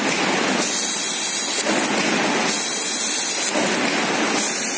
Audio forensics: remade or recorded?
recorded